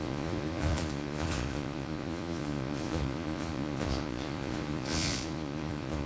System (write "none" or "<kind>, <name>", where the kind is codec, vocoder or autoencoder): vocoder, Vocos